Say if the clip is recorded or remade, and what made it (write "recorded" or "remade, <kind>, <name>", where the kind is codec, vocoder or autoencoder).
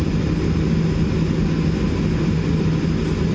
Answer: recorded